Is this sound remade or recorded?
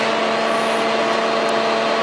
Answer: recorded